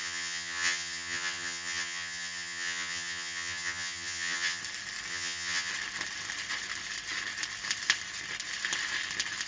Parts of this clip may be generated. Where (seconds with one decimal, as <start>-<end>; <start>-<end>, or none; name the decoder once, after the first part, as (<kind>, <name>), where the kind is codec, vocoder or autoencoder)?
0.0-4.6 (vocoder, HiFi-GAN); 5.1-5.7